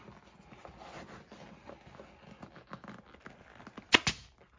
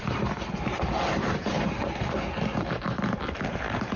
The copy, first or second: second